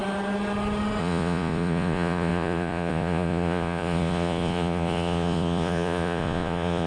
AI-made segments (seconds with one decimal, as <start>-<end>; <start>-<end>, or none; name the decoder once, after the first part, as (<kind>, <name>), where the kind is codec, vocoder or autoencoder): 1.0-6.9 (vocoder, Vocos)